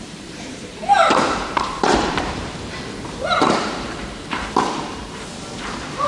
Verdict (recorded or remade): remade